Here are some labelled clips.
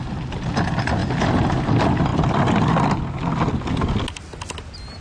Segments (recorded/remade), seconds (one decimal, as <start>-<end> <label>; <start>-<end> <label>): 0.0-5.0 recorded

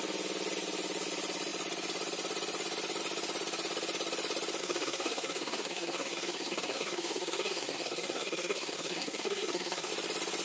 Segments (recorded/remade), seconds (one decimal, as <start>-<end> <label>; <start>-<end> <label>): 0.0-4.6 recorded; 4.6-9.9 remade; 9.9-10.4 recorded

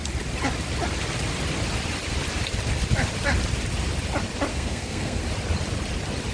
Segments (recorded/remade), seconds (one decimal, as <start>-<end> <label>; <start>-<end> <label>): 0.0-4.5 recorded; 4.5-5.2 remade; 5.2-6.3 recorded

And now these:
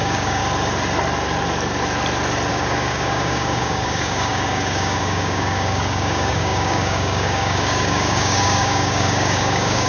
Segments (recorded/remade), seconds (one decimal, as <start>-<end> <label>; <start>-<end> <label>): 0.0-0.4 remade; 0.4-2.5 recorded; 2.5-9.9 remade

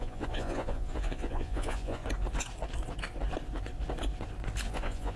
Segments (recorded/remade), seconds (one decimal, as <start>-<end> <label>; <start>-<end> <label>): 0.0-2.0 remade; 2.0-4.7 recorded; 4.7-5.2 remade